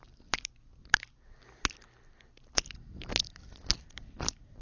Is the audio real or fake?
real